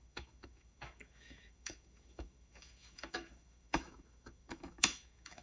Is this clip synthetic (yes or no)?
yes